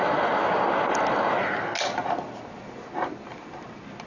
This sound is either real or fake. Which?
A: real